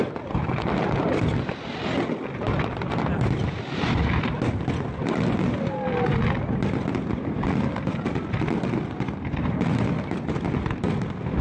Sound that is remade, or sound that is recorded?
recorded